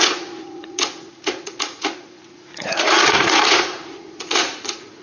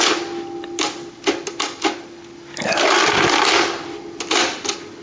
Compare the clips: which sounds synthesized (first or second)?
first